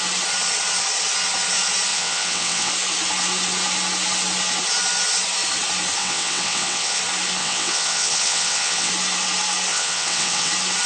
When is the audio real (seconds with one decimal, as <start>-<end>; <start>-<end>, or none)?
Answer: 0.0-1.9; 2.7-6.0; 7.0-7.4; 8.9-9.7; 10.5-10.9